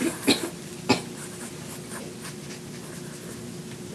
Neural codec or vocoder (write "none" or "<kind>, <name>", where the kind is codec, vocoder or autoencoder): none